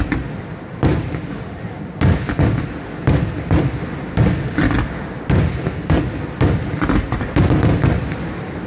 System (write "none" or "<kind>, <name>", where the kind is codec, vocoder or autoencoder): none